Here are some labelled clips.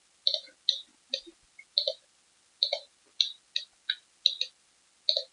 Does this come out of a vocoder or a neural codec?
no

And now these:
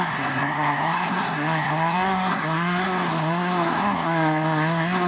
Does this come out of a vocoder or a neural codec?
yes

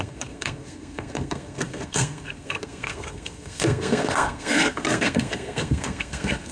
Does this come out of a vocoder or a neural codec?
yes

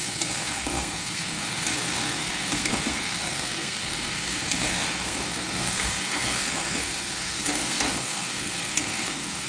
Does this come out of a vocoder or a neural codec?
yes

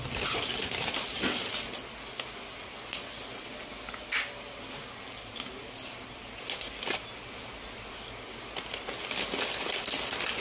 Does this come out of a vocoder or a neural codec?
no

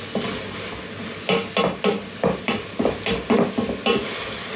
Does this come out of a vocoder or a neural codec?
no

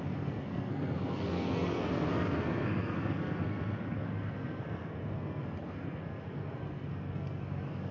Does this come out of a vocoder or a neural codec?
yes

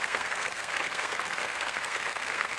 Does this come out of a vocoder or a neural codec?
yes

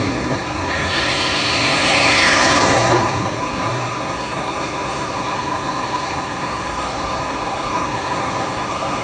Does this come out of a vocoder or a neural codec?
yes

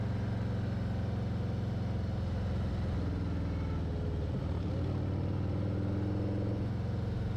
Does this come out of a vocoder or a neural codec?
no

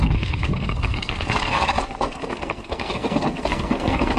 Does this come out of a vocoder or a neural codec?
yes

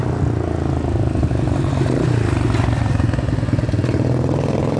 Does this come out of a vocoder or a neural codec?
no